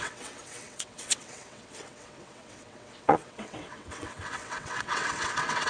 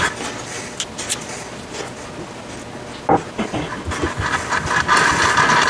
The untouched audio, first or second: second